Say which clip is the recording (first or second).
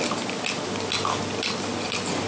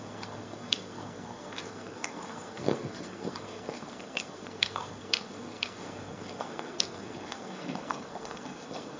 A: first